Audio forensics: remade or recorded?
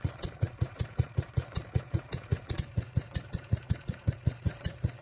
remade